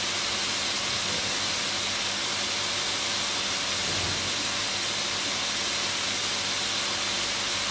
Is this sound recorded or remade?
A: recorded